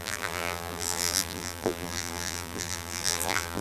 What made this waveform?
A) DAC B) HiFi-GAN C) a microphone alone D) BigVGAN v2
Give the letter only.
D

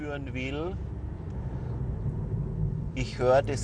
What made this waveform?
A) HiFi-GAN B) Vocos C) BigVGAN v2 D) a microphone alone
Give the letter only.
D